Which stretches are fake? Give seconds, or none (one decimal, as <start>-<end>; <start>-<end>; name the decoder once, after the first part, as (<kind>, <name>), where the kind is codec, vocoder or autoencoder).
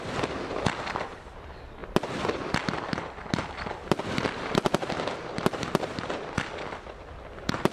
none